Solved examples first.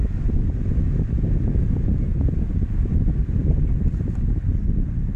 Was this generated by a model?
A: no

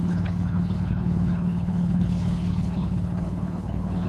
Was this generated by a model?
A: yes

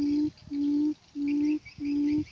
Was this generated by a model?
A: no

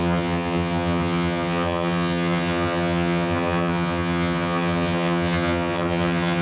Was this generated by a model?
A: yes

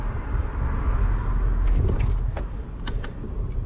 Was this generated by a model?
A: no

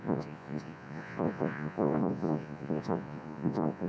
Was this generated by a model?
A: yes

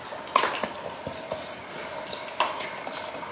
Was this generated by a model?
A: no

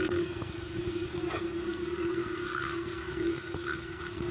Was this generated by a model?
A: yes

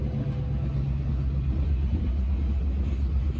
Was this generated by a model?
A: no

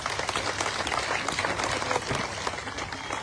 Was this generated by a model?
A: no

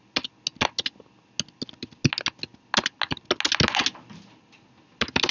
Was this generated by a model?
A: no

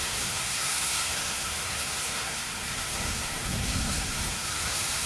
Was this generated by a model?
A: yes